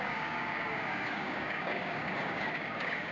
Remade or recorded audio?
remade